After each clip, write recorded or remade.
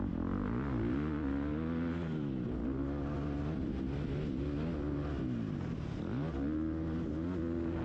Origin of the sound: recorded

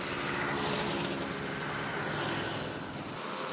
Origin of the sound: recorded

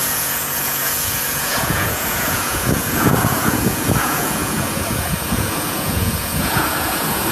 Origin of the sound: remade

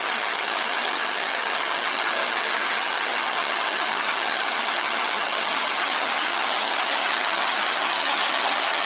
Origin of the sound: remade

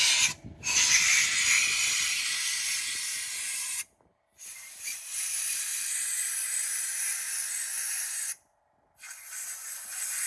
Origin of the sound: recorded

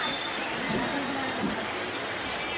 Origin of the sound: recorded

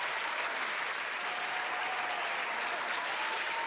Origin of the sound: recorded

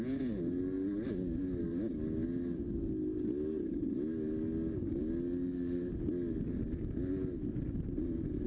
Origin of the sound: recorded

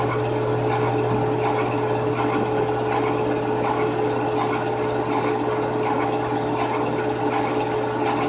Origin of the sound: recorded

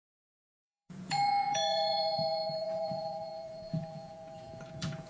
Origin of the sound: remade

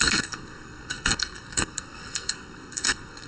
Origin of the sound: remade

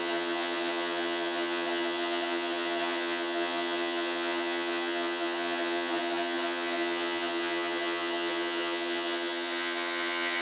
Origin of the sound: remade